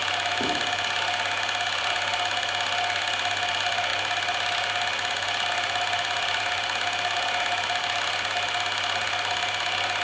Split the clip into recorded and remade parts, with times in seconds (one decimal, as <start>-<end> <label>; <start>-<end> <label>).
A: 0.0-10.0 recorded